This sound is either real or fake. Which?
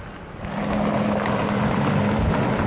real